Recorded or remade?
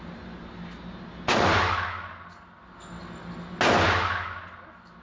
recorded